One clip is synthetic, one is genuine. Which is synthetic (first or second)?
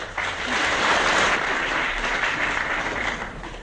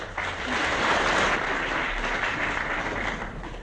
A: first